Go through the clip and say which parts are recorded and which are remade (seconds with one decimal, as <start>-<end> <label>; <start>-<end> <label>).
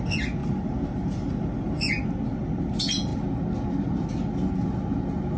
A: 0.0-0.4 recorded; 0.4-1.9 remade; 1.9-5.4 recorded